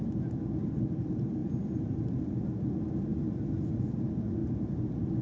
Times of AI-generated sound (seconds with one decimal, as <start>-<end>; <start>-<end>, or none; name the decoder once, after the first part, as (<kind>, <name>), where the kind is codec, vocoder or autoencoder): none